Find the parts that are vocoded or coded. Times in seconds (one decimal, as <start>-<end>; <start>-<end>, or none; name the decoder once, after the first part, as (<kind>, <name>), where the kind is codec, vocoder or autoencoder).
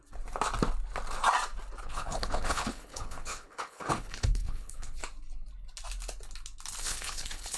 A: 1.8-5.0 (codec, HILCodec); 6.8-7.6